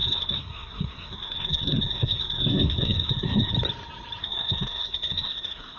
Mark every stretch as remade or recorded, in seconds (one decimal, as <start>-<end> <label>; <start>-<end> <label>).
0.0-3.5 remade; 3.5-4.2 recorded; 4.2-5.8 remade